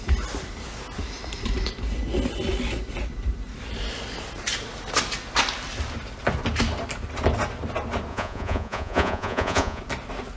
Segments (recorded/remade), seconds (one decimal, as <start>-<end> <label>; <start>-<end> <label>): 0.0-8.1 recorded; 8.1-9.8 remade; 9.8-10.4 recorded